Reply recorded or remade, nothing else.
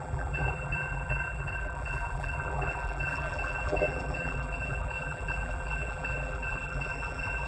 remade